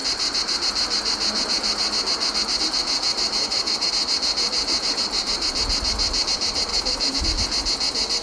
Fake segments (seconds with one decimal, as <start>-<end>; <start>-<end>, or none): 3.4-3.9; 6.7-7.2